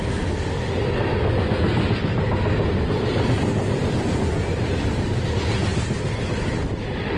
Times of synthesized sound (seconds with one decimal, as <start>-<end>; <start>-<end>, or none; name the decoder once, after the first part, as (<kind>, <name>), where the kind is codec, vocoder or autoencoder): none